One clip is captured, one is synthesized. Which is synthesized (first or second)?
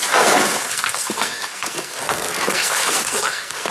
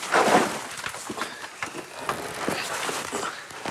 first